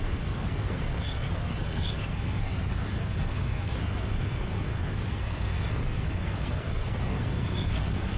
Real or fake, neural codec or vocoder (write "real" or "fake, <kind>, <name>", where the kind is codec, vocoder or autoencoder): fake, codec, SNAC